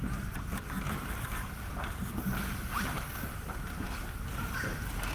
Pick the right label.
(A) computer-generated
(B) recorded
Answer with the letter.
A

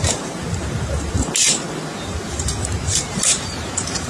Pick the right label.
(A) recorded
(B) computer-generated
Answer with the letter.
B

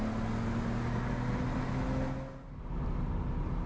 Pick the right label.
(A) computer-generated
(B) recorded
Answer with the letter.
B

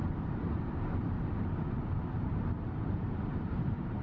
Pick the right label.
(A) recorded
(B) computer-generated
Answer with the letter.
B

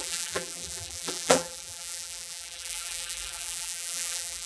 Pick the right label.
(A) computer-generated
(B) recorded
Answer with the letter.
A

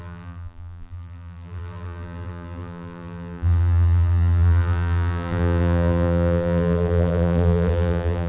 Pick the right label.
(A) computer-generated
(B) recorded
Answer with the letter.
A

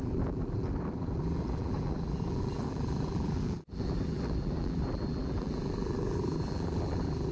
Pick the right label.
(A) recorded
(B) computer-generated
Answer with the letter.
B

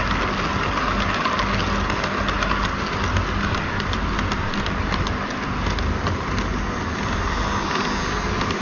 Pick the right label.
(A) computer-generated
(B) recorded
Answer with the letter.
B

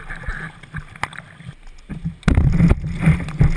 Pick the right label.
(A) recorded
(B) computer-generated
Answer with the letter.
A